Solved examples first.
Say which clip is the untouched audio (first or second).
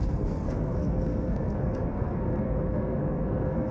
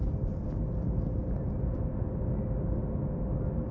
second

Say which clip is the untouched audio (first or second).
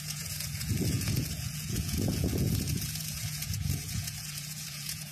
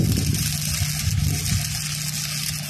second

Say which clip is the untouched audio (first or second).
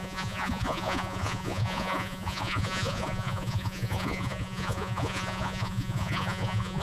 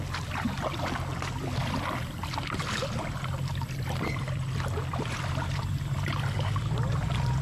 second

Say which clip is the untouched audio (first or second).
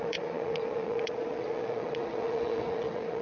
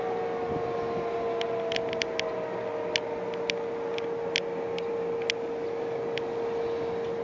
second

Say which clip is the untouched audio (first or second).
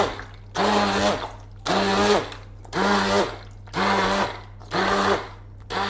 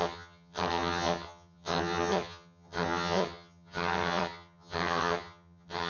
first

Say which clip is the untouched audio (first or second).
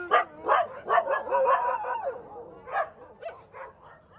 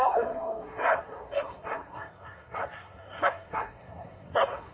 first